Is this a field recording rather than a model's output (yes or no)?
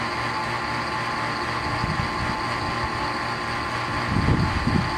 yes